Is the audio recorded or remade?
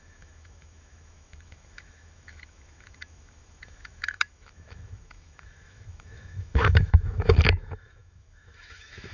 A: remade